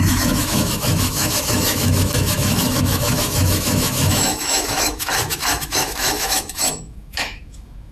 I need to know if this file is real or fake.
fake